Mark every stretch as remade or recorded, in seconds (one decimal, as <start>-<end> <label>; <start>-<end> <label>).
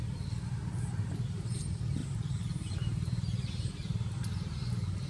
0.0-2.0 recorded; 2.0-5.1 remade